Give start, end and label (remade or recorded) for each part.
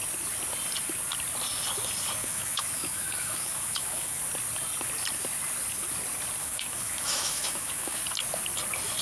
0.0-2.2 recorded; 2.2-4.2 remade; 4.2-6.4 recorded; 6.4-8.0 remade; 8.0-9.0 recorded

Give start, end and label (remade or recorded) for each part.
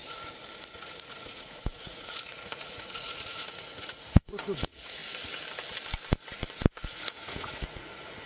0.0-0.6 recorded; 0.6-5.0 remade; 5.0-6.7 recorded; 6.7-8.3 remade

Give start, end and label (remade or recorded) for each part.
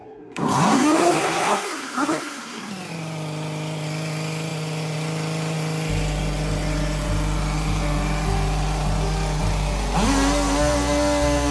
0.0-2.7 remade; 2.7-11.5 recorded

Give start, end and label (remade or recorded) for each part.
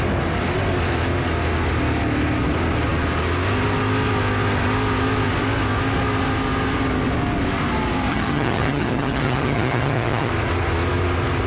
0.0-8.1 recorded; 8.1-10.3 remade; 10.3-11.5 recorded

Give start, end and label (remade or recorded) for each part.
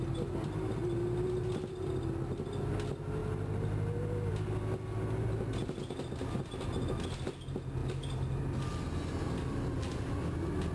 0.0-7.8 recorded; 7.8-8.4 remade; 8.4-10.7 recorded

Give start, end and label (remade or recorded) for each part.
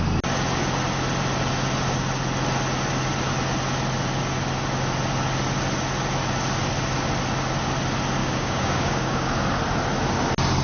0.0-8.2 recorded; 8.2-9.3 remade; 9.3-10.6 recorded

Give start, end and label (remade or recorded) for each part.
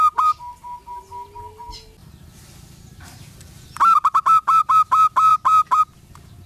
0.0-2.0 recorded; 2.0-4.7 remade; 4.7-6.5 recorded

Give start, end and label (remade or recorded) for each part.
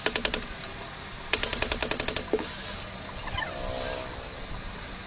0.0-5.1 recorded